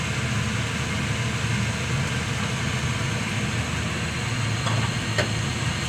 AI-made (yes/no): no